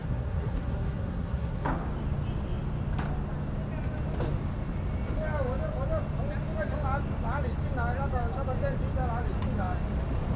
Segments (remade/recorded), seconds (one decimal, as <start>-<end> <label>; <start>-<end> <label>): 0.0-1.8 remade; 1.8-10.4 recorded